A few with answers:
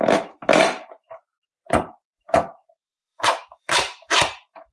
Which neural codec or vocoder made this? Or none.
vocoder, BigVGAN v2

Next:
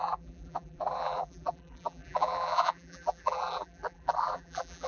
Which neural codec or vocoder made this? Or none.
vocoder, BigVGAN v2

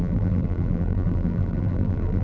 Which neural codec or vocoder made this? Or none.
vocoder, BigVGAN v2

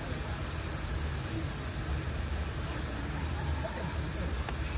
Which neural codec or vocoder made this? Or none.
none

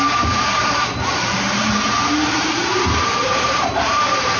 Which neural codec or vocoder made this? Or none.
vocoder, BigVGAN v2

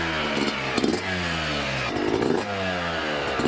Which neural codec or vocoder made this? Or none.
none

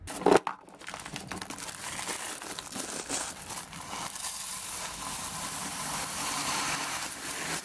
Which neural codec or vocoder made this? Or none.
none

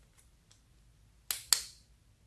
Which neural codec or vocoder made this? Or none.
none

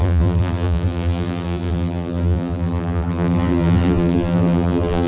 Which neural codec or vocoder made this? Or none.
vocoder, BigVGAN v2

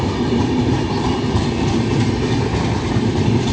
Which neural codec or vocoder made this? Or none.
none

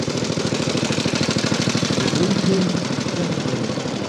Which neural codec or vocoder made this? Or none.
vocoder, BigVGAN v2